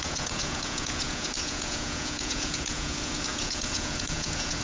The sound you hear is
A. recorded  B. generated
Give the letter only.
B